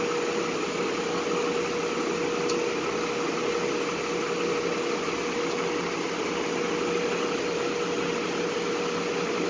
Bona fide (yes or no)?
yes